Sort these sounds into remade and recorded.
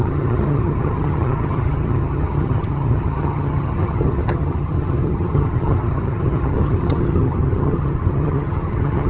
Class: remade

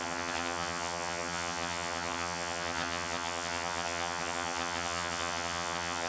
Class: remade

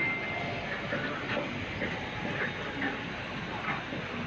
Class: recorded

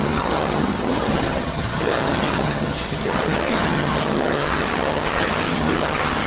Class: remade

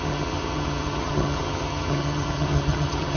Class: remade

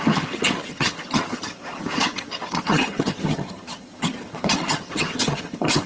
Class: remade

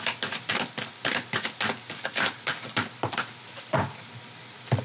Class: recorded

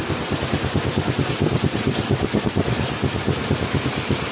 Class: recorded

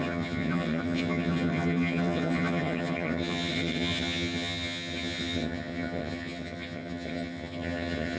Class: remade